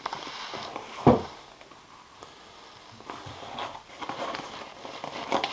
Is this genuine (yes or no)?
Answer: yes